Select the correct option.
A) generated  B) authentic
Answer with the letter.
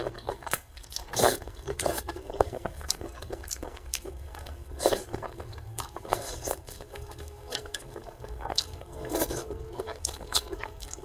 A